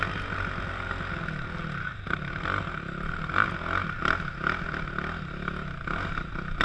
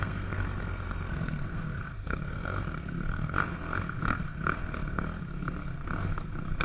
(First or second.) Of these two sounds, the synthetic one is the second